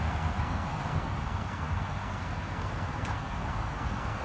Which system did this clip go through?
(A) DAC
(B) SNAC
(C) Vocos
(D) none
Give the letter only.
B